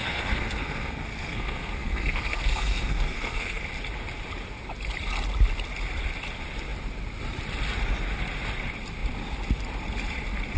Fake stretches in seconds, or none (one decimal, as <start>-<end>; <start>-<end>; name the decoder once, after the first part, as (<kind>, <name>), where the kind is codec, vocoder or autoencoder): 0.0-3.6 (codec, SNAC)